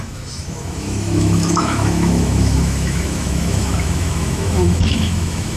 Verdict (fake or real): fake